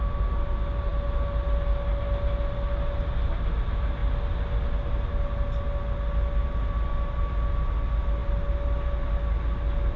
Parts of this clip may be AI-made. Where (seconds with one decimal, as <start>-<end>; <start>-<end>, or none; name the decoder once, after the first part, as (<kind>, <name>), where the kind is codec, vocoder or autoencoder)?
none